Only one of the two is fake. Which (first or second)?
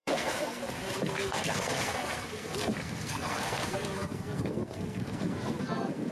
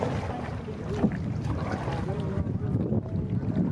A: first